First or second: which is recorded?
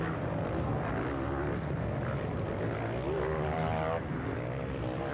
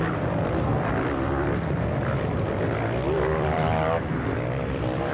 first